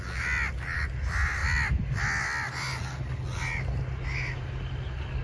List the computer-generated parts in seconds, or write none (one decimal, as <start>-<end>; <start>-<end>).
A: none